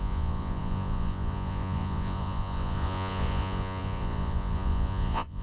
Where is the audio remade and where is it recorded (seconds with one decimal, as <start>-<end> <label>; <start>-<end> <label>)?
0.0-5.4 remade